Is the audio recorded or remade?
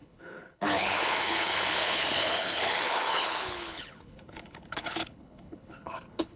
remade